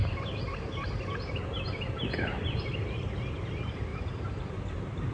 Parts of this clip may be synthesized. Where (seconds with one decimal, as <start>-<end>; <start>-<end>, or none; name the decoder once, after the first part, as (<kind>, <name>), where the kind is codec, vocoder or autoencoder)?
0.0-3.1 (vocoder, BigVGAN v2); 3.9-4.5